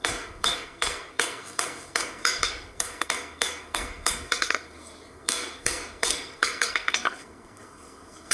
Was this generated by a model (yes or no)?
yes